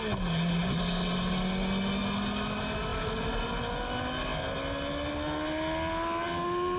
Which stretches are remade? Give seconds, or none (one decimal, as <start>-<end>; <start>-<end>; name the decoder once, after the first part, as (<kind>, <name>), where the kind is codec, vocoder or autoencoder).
none